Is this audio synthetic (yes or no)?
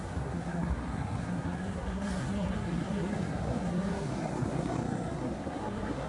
yes